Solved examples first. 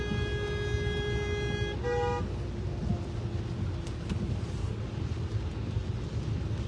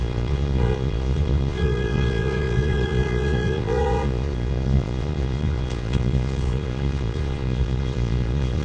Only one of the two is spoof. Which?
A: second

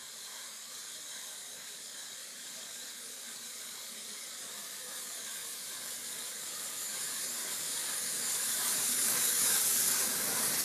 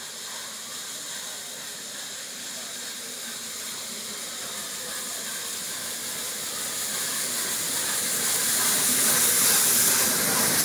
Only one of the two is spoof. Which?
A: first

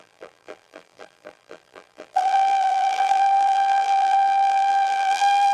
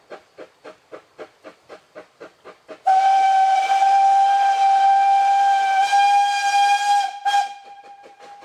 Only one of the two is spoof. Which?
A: first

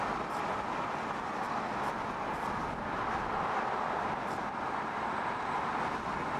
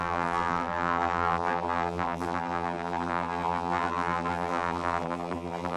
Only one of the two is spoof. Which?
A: second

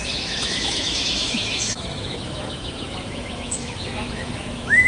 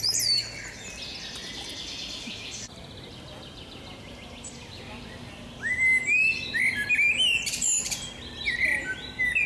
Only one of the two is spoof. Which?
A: first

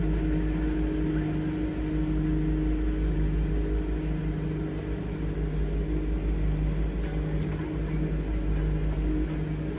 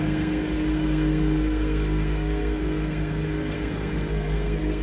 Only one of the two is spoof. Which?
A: second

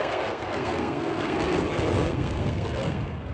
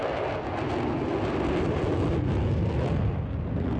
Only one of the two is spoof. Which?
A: first